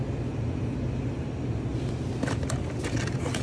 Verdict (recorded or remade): recorded